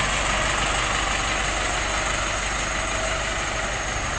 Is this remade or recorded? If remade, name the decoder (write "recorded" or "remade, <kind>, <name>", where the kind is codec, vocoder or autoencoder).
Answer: recorded